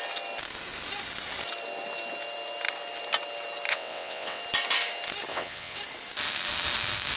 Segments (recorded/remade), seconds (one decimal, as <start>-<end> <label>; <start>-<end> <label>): 0.0-3.7 recorded; 3.7-4.4 remade; 4.4-5.3 recorded; 5.3-5.8 remade; 5.8-7.2 recorded